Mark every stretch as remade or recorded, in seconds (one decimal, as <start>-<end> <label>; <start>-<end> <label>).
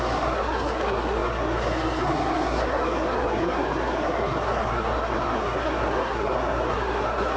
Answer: 0.0-7.4 remade